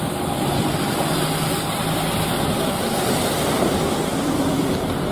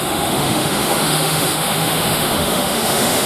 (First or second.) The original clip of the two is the first